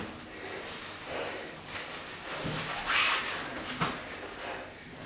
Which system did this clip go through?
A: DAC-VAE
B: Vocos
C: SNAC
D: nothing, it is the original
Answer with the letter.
D